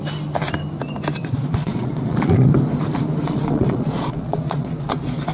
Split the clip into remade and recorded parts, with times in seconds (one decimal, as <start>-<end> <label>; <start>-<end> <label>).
0.0-1.2 recorded; 1.2-2.5 remade; 2.5-2.9 recorded; 2.9-5.3 remade